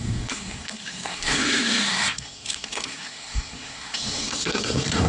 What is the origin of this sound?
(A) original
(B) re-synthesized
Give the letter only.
B